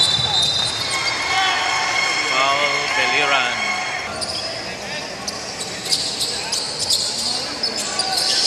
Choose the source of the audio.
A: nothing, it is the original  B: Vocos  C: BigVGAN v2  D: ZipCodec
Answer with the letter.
A